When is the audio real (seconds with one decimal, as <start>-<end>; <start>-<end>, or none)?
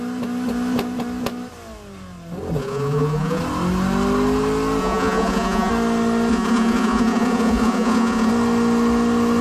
0.0-2.6; 3.4-4.8; 5.7-6.3; 8.3-9.4